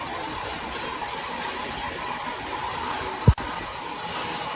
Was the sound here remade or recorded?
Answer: recorded